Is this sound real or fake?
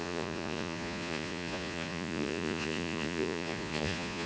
fake